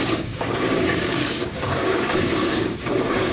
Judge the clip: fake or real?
fake